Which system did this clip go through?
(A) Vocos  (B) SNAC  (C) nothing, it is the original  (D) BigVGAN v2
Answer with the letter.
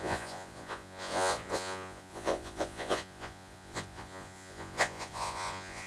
A